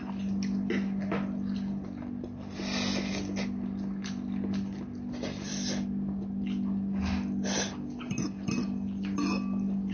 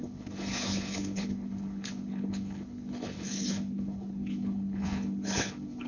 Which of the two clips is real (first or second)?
first